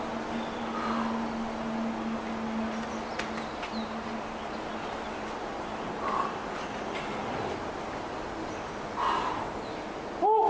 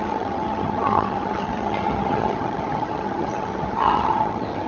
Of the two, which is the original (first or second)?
first